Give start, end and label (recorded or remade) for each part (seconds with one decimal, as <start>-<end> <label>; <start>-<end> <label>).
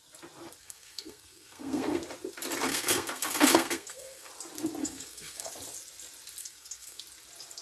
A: 0.0-0.6 recorded; 0.6-2.0 remade; 2.0-2.7 recorded; 2.7-4.3 remade; 4.3-4.8 recorded; 4.8-5.5 remade; 5.5-6.4 recorded; 6.4-7.0 remade; 7.0-7.6 recorded